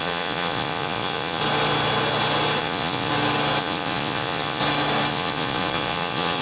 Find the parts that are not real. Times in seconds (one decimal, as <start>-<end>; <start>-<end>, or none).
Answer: 0.0-1.4; 2.6-3.1; 3.6-4.6; 5.1-6.4